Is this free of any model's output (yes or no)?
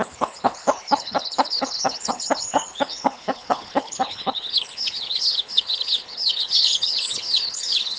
no